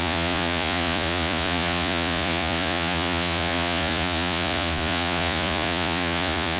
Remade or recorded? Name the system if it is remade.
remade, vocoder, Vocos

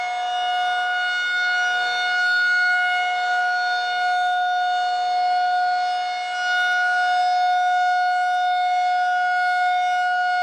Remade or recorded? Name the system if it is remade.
recorded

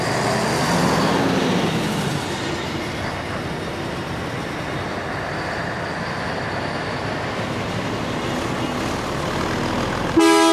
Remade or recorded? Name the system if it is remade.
recorded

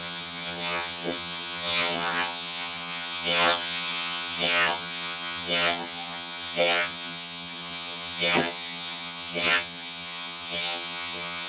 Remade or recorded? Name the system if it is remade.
remade, vocoder, HiFi-GAN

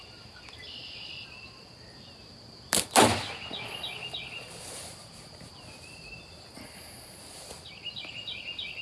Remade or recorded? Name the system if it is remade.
recorded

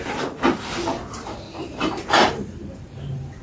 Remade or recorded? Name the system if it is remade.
remade, vocoder, BigVGAN v2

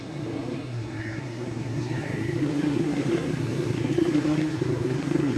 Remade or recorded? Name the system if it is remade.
remade, codec, SNAC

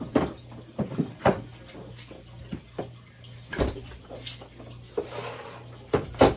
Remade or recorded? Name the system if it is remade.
recorded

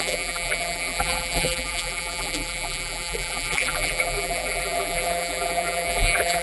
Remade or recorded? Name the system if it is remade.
remade, vocoder, BigVGAN v2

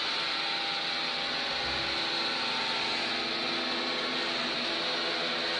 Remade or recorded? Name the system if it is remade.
recorded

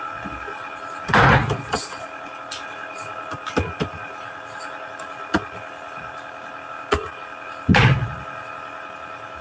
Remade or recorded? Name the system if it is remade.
recorded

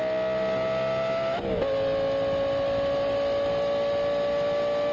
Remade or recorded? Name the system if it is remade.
recorded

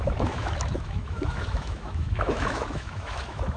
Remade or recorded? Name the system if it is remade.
remade, autoencoder, DAC-VAE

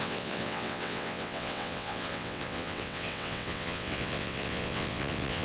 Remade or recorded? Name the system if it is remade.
remade, vocoder, WaveNeXt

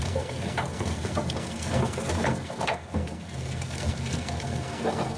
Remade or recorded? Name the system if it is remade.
remade, codec, SNAC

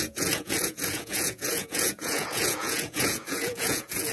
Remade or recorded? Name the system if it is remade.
remade, vocoder, Vocos